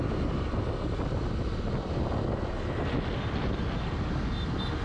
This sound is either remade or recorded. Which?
recorded